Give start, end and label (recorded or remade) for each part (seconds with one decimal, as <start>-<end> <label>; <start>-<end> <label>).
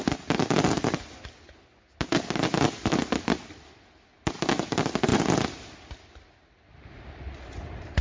0.0-8.0 recorded